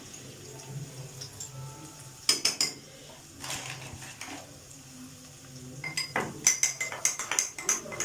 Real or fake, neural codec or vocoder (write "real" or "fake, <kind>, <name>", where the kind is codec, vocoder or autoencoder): real